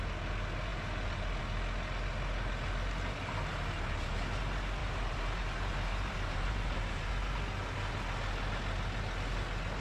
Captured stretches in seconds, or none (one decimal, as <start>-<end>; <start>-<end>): 0.0-4.8; 7.1-9.8